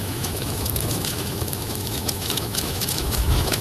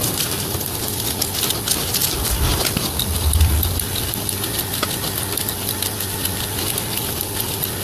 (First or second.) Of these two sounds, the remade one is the first